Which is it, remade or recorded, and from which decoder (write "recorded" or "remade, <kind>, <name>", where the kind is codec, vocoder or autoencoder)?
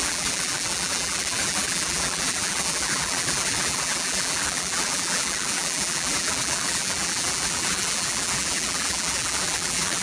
remade, vocoder, BigVGAN v2